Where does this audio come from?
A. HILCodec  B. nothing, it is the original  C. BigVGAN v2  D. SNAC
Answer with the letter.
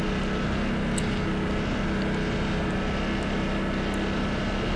B